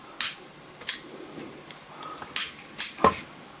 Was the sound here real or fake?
real